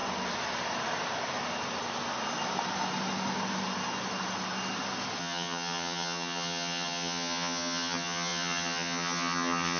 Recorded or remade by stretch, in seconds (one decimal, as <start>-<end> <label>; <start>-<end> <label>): 0.0-5.2 recorded; 5.2-9.8 remade